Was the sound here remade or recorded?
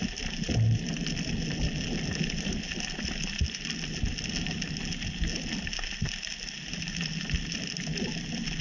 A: recorded